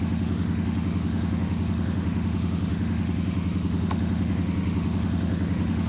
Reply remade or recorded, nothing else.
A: remade